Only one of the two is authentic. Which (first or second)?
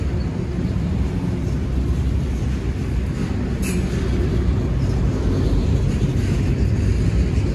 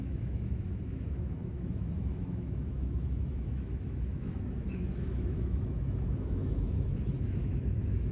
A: first